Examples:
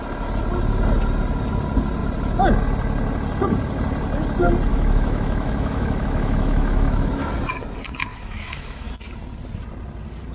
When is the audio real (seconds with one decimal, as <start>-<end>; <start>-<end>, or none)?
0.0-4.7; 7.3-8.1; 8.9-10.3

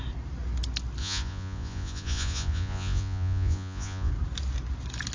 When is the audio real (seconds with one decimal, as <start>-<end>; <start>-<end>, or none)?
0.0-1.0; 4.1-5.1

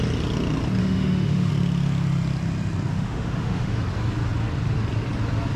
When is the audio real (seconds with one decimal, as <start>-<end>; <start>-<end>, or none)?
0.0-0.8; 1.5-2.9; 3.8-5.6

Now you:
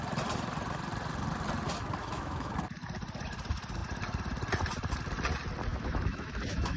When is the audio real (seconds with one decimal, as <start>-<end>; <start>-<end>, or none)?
0.0-2.0; 2.5-5.7

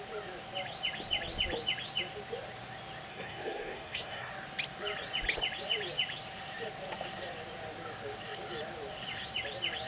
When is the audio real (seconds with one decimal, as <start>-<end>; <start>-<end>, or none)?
0.0-3.1; 4.3-9.9

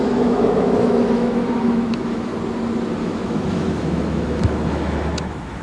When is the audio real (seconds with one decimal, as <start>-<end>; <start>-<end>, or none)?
2.3-3.0